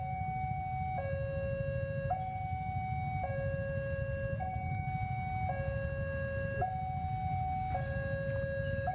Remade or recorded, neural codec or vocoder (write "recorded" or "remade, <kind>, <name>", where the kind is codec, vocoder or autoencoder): recorded